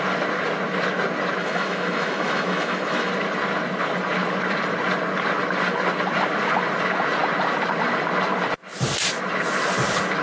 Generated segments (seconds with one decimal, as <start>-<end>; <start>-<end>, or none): 1.4-3.1